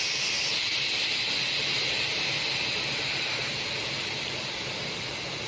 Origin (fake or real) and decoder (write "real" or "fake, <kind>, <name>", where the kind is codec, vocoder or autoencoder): fake, vocoder, BigVGAN v2